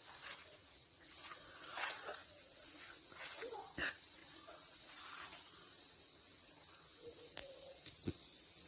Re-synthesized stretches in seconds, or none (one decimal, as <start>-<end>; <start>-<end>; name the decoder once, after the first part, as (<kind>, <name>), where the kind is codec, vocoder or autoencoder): 0.0-8.7 (vocoder, Vocos)